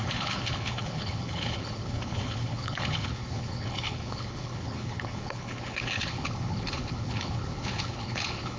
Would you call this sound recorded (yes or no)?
no